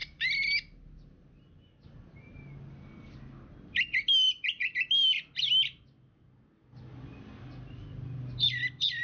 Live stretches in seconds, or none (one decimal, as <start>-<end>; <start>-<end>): 0.0-9.0